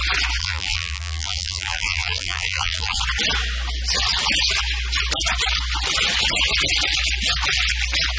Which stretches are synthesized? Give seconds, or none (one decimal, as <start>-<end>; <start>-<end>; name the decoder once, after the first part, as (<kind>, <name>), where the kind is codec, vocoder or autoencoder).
0.4-3.0 (vocoder, BigVGAN v2)